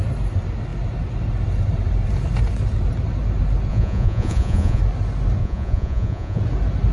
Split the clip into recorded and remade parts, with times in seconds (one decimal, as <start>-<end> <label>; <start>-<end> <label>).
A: 0.0-3.7 recorded; 3.7-4.8 remade; 4.8-5.4 recorded; 5.4-6.4 remade; 6.4-6.9 recorded